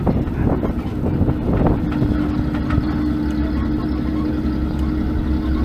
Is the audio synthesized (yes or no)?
no